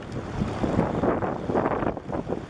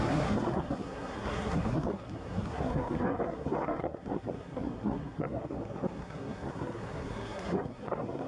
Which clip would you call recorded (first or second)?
first